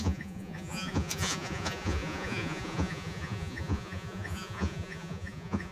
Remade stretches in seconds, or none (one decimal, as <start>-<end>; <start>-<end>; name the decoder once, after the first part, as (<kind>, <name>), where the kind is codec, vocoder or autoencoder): 0.0-5.7 (vocoder, Vocos)